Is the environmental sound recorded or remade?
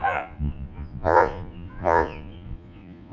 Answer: remade